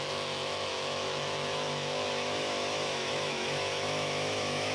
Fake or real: fake